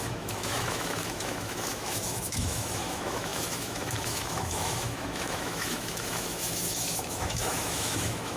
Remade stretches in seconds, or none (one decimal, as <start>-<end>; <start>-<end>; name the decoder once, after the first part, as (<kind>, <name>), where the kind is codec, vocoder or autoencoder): 0.0-8.4 (autoencoder, DAC-VAE)